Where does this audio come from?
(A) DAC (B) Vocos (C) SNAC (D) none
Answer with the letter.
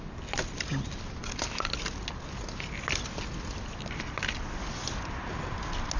D